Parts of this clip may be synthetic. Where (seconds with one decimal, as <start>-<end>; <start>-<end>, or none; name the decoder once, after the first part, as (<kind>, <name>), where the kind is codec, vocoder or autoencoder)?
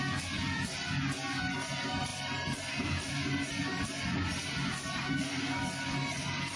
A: none